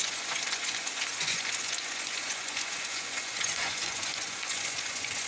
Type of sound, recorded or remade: remade